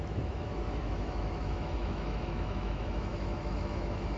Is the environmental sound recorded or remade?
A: remade